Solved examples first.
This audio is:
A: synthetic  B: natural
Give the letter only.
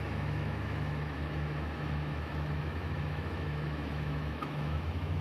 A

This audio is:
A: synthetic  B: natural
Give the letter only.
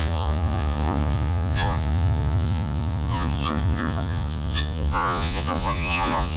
A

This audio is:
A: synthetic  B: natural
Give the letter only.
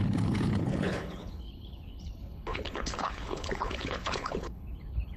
A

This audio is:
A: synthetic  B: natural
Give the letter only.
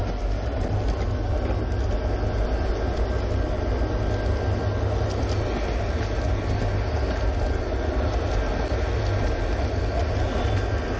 B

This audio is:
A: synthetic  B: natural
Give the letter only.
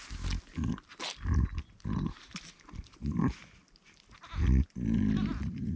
B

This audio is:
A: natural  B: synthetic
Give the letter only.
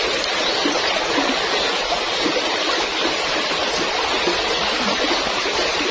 A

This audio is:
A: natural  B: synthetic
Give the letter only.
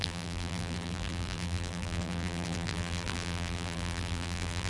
B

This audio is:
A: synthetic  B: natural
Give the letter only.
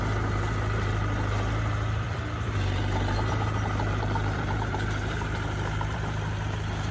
A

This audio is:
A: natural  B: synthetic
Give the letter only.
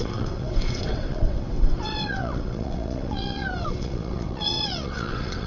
B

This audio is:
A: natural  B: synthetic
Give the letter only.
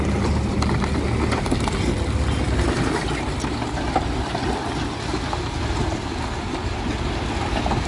A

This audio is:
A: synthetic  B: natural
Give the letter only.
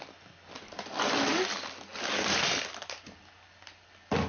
B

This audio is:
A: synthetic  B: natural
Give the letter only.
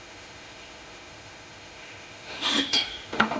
A